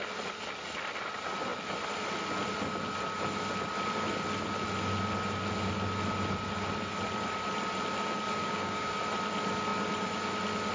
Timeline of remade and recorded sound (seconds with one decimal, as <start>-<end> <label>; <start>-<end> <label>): 0.0-8.4 recorded; 8.4-9.0 remade; 9.0-10.7 recorded